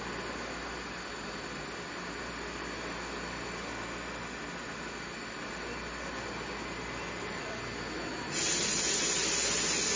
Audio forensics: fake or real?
real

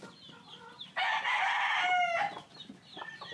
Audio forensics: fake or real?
real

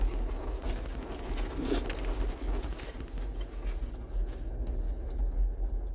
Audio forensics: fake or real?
real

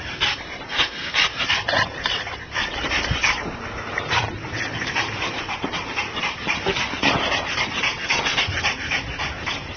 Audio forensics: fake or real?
fake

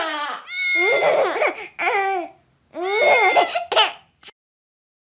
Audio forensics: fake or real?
real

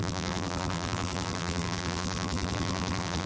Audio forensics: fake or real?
fake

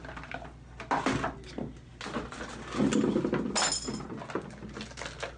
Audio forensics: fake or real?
real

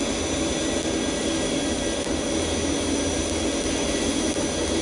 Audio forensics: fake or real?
real